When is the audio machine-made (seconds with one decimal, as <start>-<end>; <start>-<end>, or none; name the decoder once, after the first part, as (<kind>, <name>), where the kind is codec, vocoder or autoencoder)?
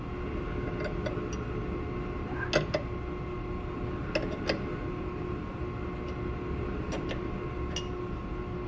none